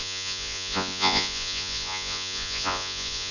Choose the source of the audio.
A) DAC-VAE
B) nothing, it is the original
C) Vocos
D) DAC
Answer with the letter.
C